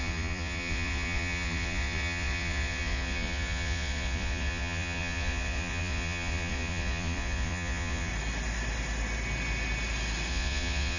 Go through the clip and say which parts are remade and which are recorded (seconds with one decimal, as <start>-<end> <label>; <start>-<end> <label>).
0.0-8.1 remade; 8.1-10.3 recorded; 10.3-11.0 remade

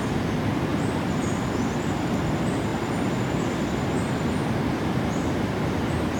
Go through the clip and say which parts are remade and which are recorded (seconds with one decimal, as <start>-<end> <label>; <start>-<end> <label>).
0.0-0.7 recorded; 0.7-1.4 remade; 1.4-6.2 recorded

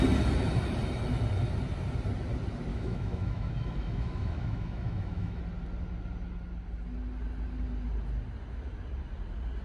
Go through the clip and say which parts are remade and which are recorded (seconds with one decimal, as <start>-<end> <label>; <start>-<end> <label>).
0.0-2.7 recorded; 2.7-5.4 remade; 5.4-9.6 recorded